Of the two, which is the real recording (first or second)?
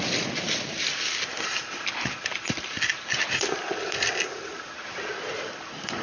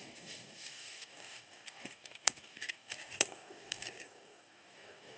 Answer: first